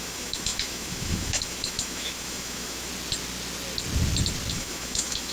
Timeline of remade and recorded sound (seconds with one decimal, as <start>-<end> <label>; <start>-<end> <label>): 0.0-2.9 remade; 2.9-4.5 recorded; 4.5-5.3 remade